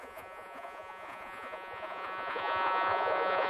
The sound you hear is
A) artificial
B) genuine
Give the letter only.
A